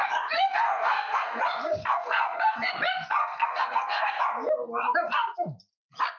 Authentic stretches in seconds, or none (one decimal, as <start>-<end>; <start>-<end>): 0.0-0.5; 1.4-1.8; 2.7-3.2; 4.2-6.2